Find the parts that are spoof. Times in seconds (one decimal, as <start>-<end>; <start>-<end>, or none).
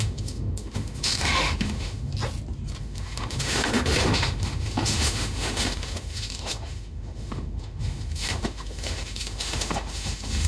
0.0-2.1; 2.8-10.5